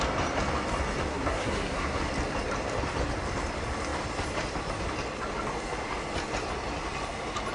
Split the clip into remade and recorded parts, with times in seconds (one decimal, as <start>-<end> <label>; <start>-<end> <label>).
0.0-1.1 recorded; 1.1-2.0 remade; 2.0-7.5 recorded